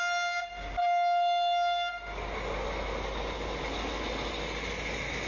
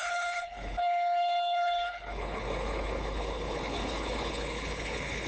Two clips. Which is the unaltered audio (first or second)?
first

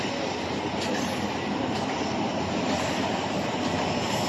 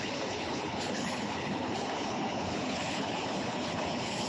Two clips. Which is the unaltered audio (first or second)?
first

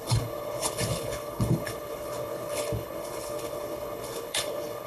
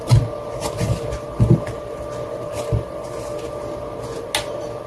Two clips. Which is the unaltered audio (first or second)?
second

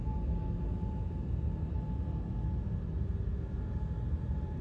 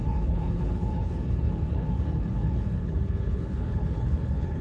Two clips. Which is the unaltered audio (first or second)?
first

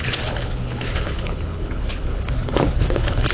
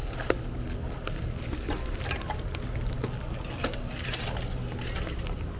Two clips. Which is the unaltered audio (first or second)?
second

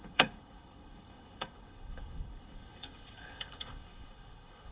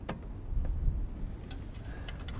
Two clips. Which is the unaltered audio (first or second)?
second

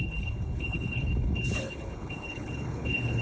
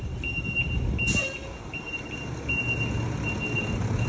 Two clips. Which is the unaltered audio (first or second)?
second